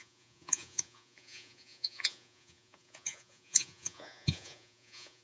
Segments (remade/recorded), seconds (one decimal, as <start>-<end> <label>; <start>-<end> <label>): 0.0-5.2 remade